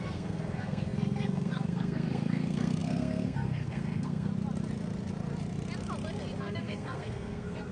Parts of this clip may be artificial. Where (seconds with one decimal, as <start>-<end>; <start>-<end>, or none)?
0.0-4.3; 6.4-7.7